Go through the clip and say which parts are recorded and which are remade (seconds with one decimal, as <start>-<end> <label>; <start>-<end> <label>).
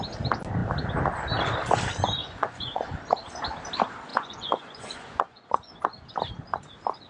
0.0-2.2 recorded; 2.2-3.0 remade; 3.0-4.1 recorded; 4.1-5.7 remade; 5.7-7.1 recorded